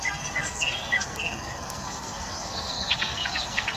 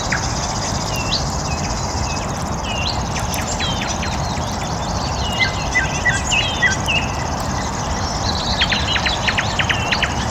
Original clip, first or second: second